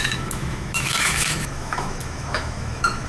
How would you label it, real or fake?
fake